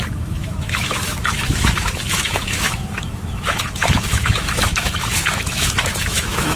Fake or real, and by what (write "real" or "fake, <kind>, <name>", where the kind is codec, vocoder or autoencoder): fake, autoencoder, DAC-VAE